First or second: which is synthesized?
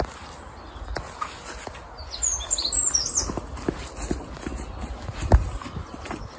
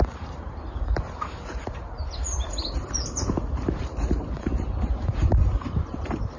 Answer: second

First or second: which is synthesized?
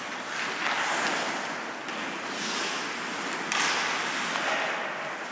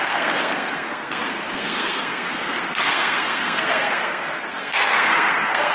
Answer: second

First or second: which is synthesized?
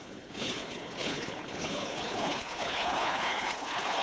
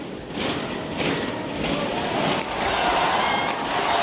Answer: first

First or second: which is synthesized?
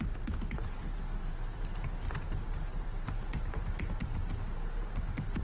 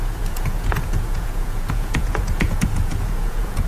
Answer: second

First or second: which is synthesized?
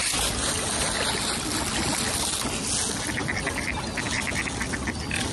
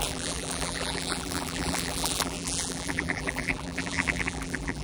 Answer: second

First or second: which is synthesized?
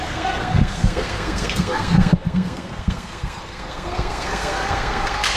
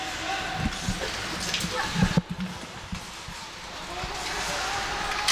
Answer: first